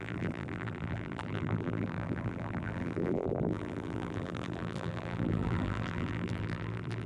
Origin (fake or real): fake